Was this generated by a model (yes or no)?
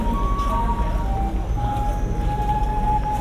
no